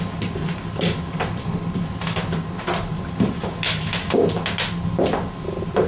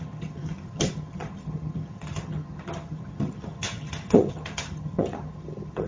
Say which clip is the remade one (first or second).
second